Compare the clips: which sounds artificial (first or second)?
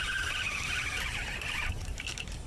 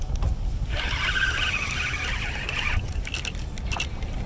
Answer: first